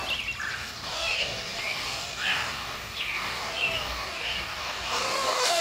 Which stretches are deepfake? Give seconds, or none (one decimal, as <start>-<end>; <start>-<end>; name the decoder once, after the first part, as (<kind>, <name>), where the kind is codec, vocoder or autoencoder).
0.5-5.6 (codec, DAC)